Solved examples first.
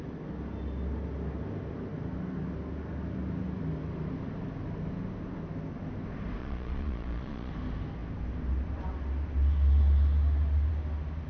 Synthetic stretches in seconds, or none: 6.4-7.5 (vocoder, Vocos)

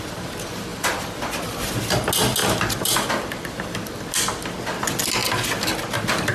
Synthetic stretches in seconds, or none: 0.7-1.7 (vocoder, BigVGAN v2); 2.4-4.1

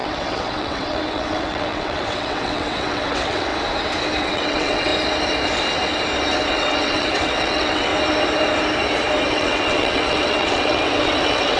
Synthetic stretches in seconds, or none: 0.0-3.5 (vocoder, WaveNeXt); 4.2-4.9; 6.5-7.9; 9.3-11.6

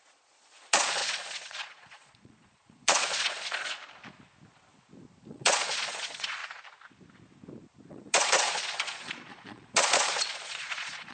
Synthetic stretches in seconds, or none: 0.0-3.8 (vocoder, Vocos); 5.3-6.4; 7.9-11.1

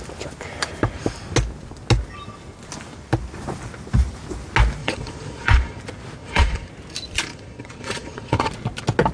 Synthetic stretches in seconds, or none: 4.8-5.8 (vocoder, Vocos); 6.2-6.7; 7.3-8.5

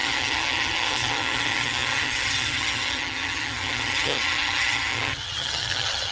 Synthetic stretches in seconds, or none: 0.0-6.1 (vocoder, HiFi-GAN)